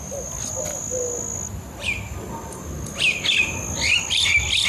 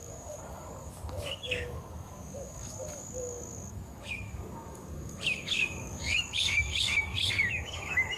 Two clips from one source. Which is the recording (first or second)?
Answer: first